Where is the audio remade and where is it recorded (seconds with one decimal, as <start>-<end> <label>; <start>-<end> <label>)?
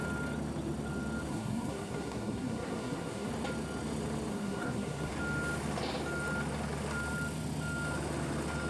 0.0-1.3 recorded; 1.3-3.3 remade; 3.3-4.3 recorded; 4.3-5.1 remade; 5.1-8.7 recorded